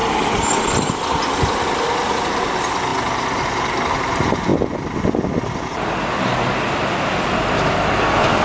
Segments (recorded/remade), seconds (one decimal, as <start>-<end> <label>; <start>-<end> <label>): 0.0-8.4 recorded